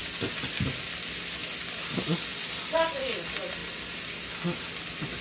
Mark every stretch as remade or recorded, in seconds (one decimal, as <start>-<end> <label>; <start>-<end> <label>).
0.0-5.2 recorded